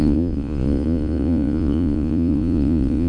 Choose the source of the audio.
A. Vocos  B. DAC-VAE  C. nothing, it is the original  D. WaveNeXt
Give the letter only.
A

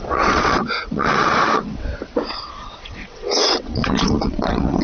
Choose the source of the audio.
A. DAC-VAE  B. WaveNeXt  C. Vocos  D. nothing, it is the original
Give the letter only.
B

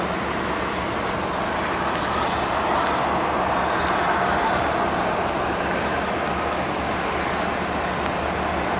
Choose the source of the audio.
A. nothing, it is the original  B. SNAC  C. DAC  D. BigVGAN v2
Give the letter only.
A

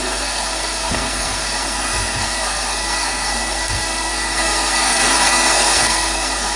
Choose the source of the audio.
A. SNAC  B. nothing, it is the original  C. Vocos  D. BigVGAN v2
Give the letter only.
A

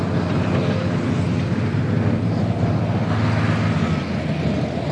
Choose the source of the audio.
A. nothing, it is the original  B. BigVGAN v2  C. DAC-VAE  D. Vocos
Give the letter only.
A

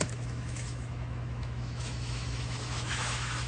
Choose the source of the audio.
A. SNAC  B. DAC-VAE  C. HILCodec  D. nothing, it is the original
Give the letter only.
B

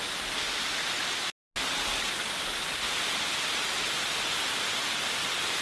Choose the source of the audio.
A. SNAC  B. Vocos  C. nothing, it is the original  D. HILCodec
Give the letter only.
C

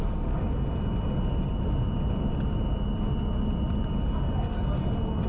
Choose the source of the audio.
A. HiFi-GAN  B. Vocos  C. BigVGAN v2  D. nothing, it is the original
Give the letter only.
D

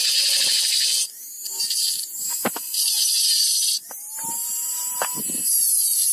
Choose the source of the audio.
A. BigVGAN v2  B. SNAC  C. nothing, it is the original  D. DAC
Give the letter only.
C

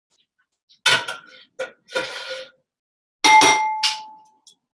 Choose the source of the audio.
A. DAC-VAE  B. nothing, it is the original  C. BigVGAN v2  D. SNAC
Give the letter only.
B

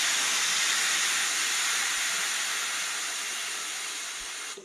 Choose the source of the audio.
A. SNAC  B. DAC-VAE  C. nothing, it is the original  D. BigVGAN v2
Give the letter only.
C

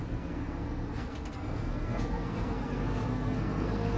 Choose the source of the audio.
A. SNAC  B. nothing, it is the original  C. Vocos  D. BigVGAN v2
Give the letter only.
A